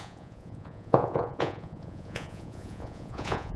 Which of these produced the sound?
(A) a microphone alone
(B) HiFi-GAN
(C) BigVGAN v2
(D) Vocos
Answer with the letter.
D